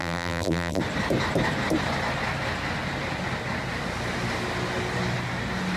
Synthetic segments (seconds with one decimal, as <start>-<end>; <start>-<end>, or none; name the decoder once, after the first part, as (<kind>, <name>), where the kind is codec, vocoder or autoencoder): 0.0-0.8 (vocoder, BigVGAN v2)